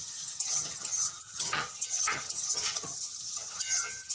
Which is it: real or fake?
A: fake